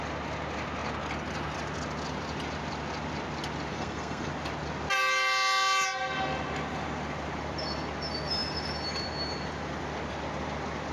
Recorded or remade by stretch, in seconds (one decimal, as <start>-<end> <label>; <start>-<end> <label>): 0.0-3.7 recorded; 3.7-4.3 remade; 4.3-10.9 recorded

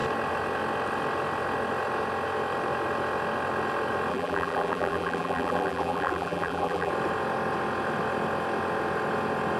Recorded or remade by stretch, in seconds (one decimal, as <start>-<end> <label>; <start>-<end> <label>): 0.0-4.1 recorded; 4.1-6.9 remade; 6.9-9.6 recorded

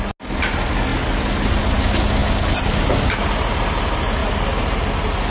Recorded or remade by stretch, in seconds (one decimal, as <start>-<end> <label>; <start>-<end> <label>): 0.0-5.3 recorded

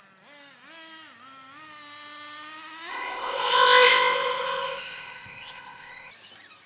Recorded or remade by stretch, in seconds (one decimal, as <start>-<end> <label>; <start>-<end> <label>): 0.0-2.9 recorded; 2.9-6.1 remade; 6.1-6.7 recorded